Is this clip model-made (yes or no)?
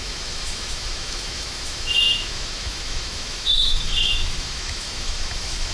yes